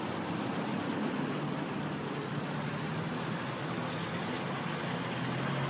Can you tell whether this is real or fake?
real